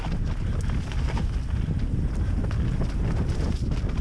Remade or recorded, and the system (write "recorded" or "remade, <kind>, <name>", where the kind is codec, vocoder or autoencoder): recorded